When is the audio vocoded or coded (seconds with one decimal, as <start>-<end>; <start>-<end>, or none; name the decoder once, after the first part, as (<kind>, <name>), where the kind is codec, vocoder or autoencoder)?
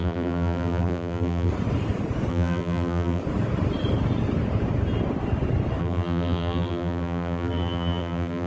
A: 0.0-1.5 (vocoder, BigVGAN v2); 2.3-3.2; 5.8-8.5